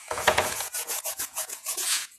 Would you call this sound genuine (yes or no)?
no